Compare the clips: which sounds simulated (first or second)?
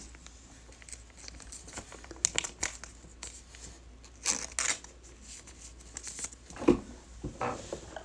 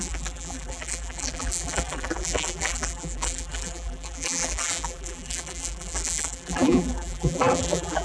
second